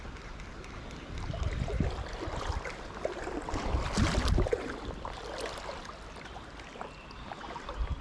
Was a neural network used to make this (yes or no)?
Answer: no